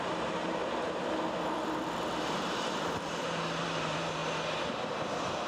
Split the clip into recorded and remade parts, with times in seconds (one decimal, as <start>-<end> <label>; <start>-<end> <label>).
0.0-0.6 remade; 0.6-3.6 recorded; 3.6-4.2 remade; 4.2-5.5 recorded